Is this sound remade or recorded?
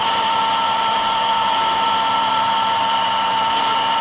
remade